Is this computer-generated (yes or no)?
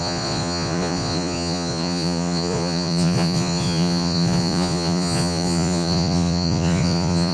yes